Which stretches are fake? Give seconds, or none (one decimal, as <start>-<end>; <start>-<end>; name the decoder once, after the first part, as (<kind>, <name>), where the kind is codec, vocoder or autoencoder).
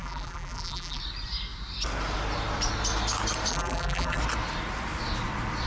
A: 0.0-1.0 (vocoder, BigVGAN v2); 3.5-4.2